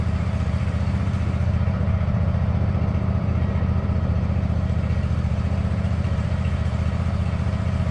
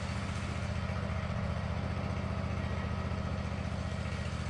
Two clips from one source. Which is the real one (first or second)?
second